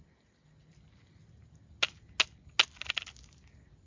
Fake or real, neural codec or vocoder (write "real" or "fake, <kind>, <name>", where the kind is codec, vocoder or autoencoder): real